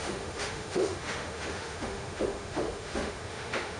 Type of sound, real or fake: fake